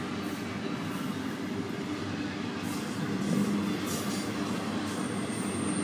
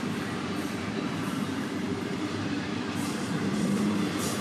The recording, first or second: first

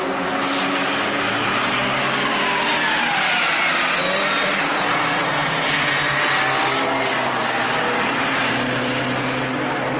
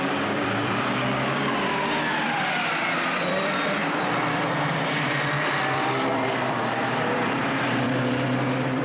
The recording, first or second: first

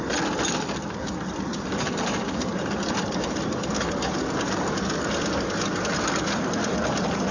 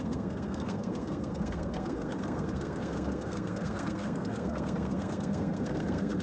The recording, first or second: first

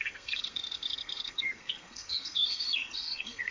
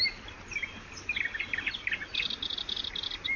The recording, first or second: second